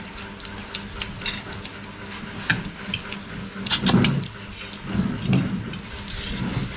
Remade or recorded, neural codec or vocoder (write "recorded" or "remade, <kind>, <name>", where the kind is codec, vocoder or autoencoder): recorded